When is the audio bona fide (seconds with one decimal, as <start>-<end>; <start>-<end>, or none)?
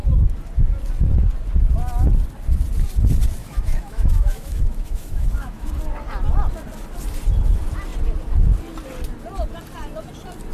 0.0-3.4; 5.7-10.5